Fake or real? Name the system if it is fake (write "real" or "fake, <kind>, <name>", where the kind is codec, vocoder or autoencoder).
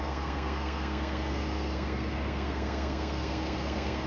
fake, codec, SNAC